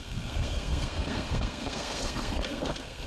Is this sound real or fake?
fake